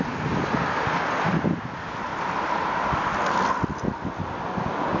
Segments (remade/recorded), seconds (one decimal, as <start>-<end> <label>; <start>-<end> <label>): 0.0-5.0 recorded